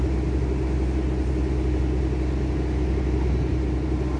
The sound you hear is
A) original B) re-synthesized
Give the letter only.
A